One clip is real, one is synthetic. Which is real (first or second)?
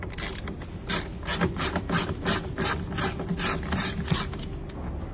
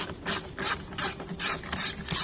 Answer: first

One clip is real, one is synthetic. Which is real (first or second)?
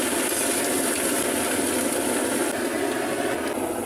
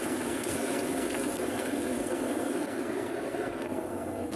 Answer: first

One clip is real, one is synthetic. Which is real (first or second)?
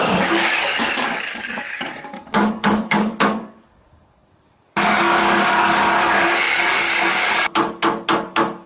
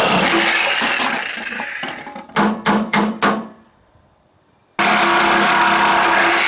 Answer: second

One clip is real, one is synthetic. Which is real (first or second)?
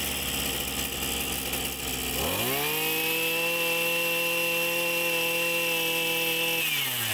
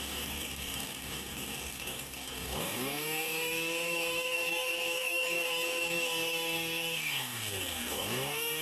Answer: first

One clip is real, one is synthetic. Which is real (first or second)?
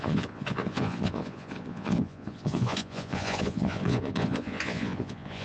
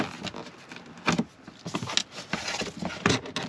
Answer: second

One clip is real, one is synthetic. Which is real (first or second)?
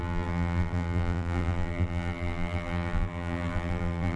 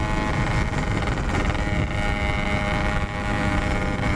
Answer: second